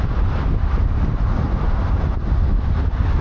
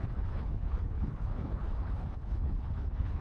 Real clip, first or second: first